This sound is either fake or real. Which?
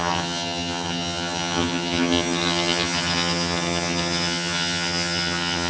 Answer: fake